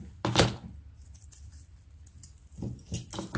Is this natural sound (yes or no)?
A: yes